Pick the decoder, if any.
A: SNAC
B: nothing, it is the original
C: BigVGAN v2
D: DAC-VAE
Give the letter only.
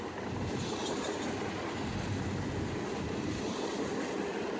B